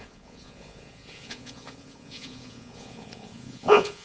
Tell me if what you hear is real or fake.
fake